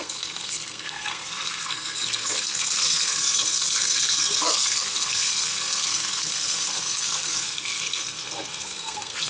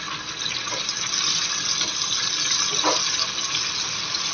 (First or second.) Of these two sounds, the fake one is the first